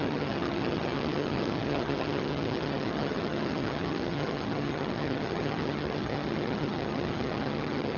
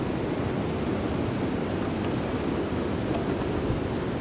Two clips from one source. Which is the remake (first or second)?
first